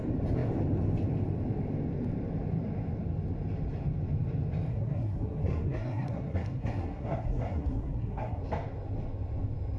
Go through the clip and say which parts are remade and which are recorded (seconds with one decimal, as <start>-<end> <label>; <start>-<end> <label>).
0.0-4.7 recorded; 4.7-8.4 remade; 8.4-9.8 recorded